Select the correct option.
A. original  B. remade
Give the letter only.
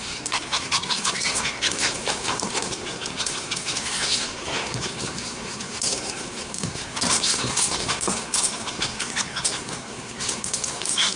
B